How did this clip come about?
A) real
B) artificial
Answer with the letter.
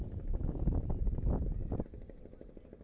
A